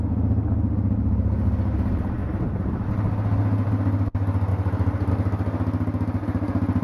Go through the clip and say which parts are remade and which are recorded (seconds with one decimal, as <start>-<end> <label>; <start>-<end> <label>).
0.0-2.2 recorded; 2.2-2.9 remade; 2.9-4.5 recorded; 4.5-5.1 remade; 5.1-6.8 recorded